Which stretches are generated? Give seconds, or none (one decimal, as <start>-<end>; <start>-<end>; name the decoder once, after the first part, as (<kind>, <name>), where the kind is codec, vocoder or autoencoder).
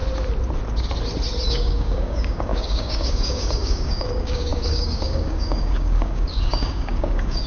1.5-7.5 (codec, DAC)